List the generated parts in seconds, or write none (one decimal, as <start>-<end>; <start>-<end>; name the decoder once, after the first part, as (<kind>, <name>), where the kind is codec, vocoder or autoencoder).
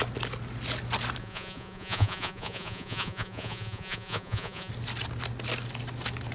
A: 1.2-4.7 (vocoder, Vocos)